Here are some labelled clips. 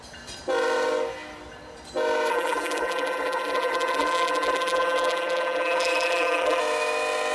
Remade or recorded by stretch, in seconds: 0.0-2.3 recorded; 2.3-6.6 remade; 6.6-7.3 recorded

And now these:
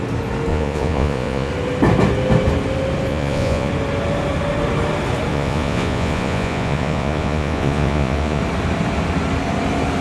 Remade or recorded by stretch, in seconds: 0.0-0.5 recorded; 0.5-1.5 remade; 1.5-3.1 recorded; 3.1-3.7 remade; 3.7-5.3 recorded; 5.3-8.4 remade; 8.4-10.0 recorded